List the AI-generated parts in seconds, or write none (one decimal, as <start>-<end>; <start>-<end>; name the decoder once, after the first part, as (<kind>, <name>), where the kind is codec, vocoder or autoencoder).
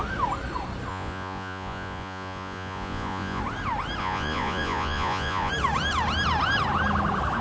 0.9-3.4 (vocoder, Vocos); 4.0-5.5